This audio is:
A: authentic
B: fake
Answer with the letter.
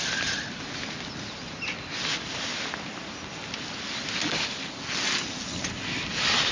A